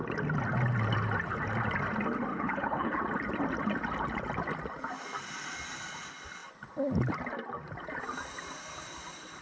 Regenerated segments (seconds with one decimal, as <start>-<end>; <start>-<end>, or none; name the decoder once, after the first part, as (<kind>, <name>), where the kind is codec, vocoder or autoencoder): 2.3-3.0 (codec, HILCodec)